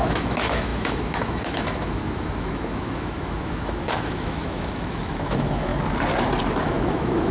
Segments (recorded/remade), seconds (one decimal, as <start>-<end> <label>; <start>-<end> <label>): 0.0-5.7 remade; 5.7-6.6 recorded; 6.6-7.3 remade